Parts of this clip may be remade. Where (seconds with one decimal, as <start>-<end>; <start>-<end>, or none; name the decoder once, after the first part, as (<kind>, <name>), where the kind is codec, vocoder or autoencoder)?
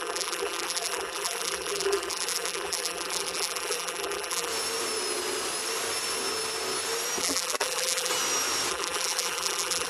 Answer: 0.0-4.5 (vocoder, BigVGAN v2); 7.2-8.1; 8.7-9.9